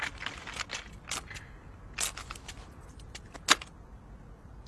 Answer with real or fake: real